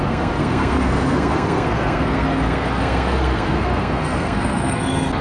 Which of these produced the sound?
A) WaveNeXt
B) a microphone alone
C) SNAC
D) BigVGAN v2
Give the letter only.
C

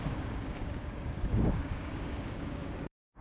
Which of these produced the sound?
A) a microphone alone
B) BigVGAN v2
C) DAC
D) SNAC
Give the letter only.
C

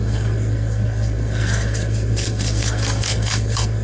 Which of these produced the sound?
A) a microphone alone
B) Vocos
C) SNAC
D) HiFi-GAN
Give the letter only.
C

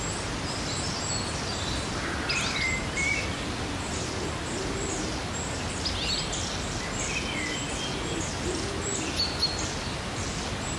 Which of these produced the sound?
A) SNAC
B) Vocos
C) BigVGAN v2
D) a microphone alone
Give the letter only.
D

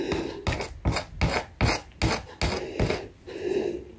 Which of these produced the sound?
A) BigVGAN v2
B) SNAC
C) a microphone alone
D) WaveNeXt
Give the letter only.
C